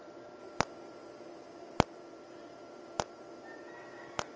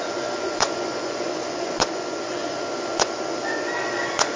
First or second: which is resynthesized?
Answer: second